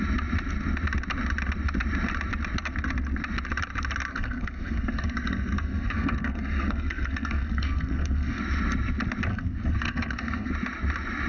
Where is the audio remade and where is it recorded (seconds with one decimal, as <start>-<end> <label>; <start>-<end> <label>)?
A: 0.0-4.1 recorded; 4.1-8.4 remade; 8.4-9.3 recorded; 9.3-10.5 remade; 10.5-11.3 recorded